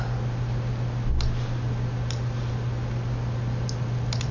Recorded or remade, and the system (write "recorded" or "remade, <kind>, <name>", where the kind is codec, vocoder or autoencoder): recorded